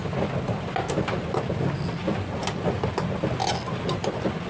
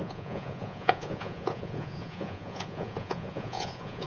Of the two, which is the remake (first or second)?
second